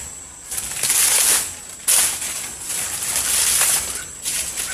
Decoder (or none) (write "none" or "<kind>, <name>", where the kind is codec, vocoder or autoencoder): none